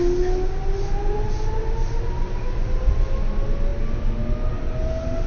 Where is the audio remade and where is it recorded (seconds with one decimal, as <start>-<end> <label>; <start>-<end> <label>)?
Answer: 0.0-5.3 recorded